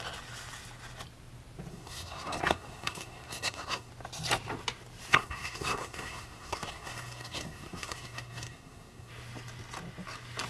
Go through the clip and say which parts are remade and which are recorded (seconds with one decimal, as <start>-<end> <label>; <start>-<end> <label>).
0.0-1.7 recorded; 1.7-3.9 remade; 3.9-5.1 recorded; 5.1-9.1 remade; 9.1-10.5 recorded